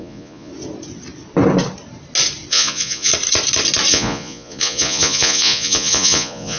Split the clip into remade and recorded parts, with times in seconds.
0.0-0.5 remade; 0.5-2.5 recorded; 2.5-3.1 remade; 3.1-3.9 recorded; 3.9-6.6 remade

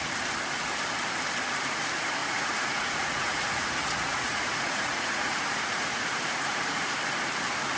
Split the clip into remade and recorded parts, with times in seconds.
0.0-2.2 recorded; 2.2-6.9 remade; 6.9-7.8 recorded